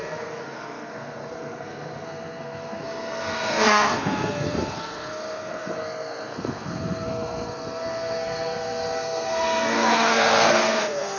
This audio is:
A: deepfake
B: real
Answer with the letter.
A